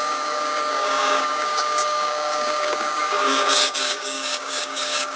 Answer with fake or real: fake